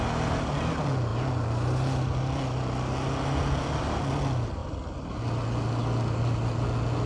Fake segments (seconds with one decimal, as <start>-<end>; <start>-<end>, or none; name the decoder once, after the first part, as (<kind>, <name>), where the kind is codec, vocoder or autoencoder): none